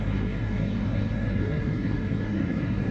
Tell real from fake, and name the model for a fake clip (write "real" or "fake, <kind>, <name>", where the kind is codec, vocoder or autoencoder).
fake, codec, SNAC